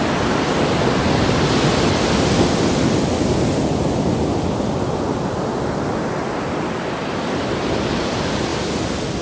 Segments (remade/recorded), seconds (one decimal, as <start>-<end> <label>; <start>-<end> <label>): 0.0-9.2 recorded